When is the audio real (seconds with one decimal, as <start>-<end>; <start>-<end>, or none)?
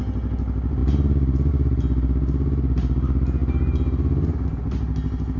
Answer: 0.0-5.4